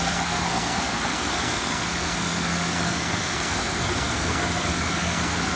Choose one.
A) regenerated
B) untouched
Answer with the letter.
A